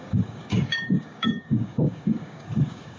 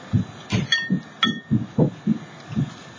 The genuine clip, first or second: second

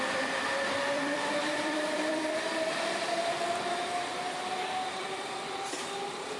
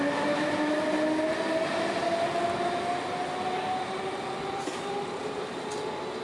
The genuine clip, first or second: second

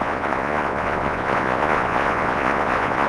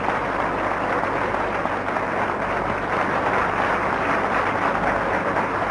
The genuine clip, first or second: second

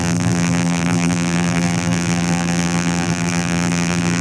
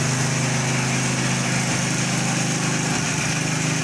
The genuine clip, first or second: second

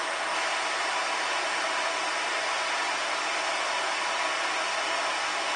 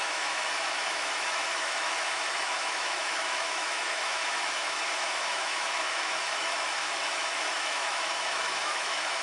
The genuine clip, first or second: first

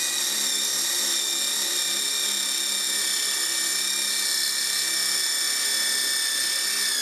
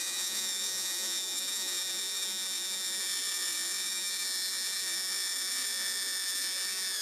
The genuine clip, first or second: first